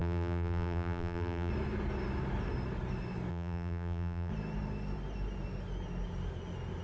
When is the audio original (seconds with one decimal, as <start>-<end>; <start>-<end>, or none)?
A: 1.5-3.3; 4.3-6.8